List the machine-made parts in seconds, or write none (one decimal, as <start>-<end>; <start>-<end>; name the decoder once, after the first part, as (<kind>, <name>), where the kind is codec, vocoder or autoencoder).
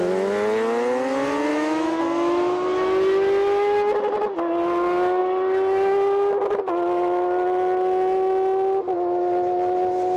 1.5-2.0 (autoencoder, DAC-VAE)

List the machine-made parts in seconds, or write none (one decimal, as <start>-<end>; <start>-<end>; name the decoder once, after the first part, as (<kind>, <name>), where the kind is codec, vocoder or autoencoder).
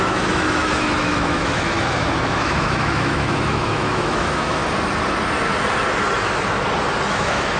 0.0-4.6 (autoencoder, DAC-VAE); 7.1-7.6